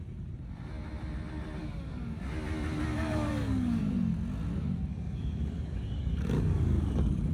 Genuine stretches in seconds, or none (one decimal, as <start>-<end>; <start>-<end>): 0.0-1.6; 2.2-2.9; 3.8-4.9